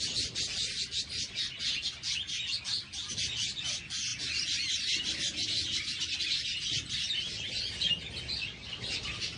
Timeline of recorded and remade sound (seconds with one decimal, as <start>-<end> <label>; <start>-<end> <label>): 0.0-9.4 recorded